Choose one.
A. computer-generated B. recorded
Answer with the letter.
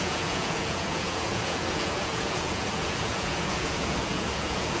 A